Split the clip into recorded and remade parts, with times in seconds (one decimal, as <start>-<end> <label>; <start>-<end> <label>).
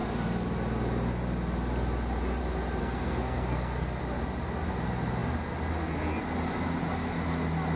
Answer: 0.0-2.8 recorded; 2.8-4.0 remade; 4.0-7.8 recorded